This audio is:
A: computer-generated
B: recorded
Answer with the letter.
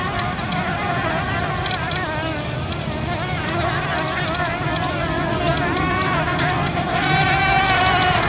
B